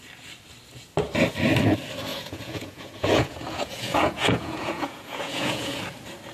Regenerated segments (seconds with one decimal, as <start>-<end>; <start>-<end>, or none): 2.1-5.8